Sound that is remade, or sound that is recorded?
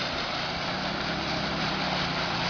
recorded